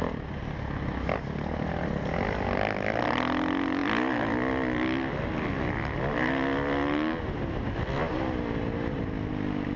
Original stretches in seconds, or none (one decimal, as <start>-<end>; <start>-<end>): 0.0-9.8